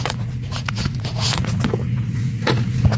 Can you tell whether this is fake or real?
fake